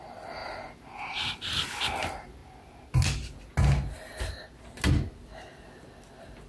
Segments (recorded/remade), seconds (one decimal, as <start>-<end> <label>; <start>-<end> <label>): 0.0-6.5 recorded